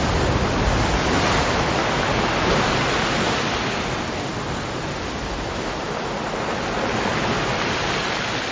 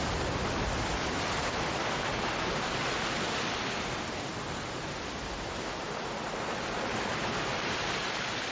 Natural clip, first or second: first